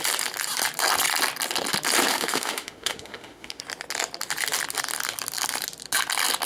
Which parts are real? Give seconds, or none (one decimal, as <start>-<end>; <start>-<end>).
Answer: 0.0-2.1; 3.6-6.5